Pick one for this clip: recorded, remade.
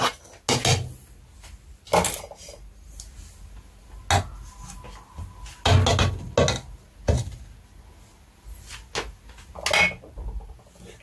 recorded